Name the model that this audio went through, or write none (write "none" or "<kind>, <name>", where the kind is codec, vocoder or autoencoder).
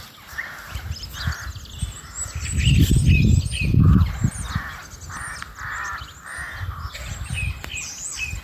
none